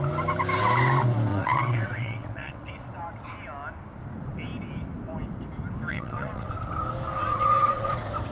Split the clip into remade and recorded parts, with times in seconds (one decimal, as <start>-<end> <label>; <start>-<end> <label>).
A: 0.0-1.3 recorded; 1.3-2.7 remade; 2.7-5.9 recorded; 5.9-6.5 remade; 6.5-7.2 recorded; 7.2-7.9 remade; 7.9-8.3 recorded